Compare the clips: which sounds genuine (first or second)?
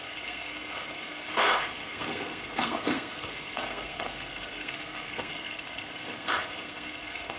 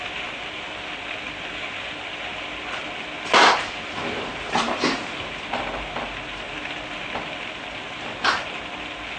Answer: second